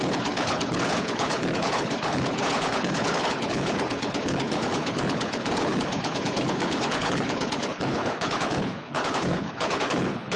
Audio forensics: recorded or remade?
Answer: remade